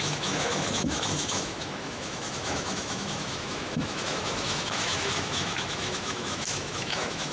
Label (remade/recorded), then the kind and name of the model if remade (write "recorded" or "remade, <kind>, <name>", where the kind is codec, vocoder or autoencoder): remade, autoencoder, DAC-VAE